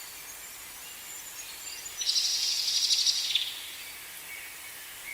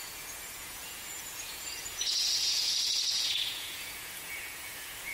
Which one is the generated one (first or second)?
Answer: second